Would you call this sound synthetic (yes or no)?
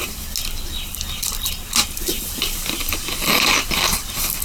no